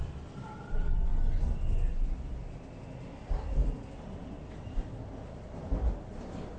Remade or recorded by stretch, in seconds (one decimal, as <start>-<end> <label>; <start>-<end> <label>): 0.0-1.1 remade; 1.1-3.2 recorded; 3.2-4.2 remade; 4.2-5.7 recorded; 5.7-6.6 remade